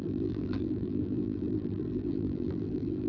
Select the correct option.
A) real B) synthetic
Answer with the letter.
B